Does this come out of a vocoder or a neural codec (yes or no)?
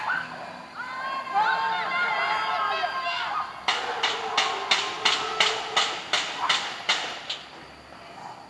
no